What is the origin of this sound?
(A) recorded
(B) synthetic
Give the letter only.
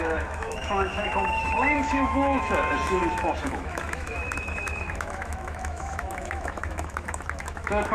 B